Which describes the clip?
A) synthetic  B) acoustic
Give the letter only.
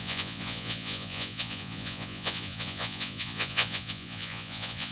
A